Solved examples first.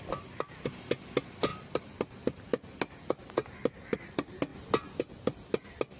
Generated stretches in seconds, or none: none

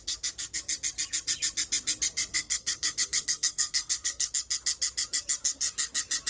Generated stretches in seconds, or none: 2.3-4.3